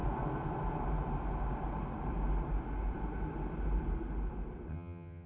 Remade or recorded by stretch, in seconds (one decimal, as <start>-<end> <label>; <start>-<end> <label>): 0.0-4.7 recorded; 4.7-5.3 remade